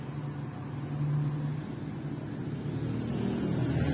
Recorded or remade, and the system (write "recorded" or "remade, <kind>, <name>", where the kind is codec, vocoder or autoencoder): recorded